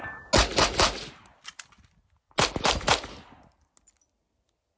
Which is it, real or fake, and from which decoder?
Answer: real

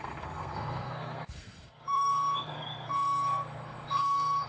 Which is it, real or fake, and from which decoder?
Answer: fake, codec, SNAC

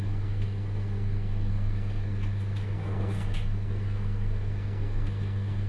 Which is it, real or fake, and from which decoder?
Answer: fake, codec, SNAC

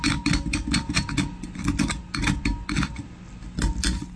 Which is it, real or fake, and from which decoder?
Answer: real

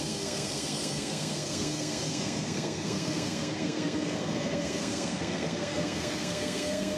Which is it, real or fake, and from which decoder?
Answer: fake, codec, SNAC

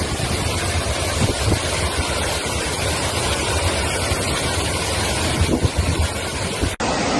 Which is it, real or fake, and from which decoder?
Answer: real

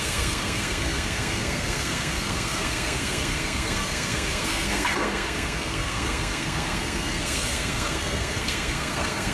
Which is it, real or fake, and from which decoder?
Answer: fake, codec, SNAC